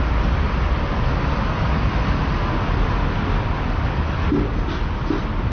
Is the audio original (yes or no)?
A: yes